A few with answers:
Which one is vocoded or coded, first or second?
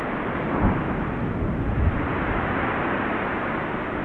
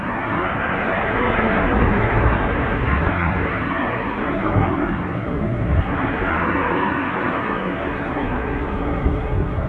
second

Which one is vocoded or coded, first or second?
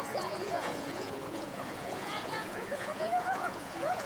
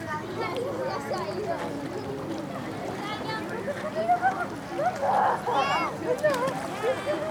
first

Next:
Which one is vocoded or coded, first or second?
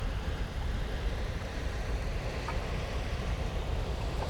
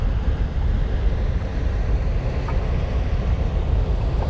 first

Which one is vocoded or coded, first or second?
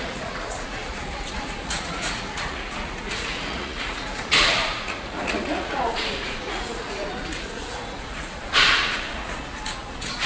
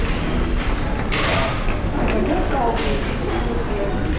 first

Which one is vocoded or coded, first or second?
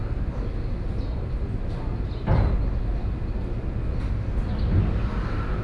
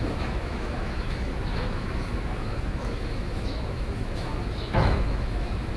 second